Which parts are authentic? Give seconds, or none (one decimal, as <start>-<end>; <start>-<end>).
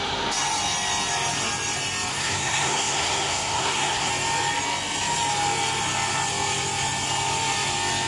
0.0-2.1; 4.1-8.1